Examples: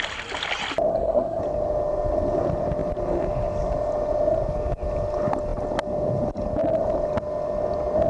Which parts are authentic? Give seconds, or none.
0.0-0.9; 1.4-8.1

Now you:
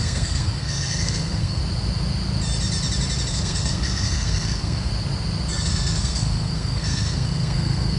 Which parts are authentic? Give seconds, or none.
1.6-3.3; 4.9-5.5